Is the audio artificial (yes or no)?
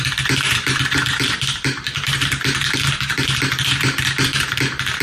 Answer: yes